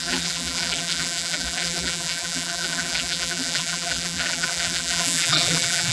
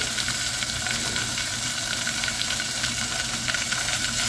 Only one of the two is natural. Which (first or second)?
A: second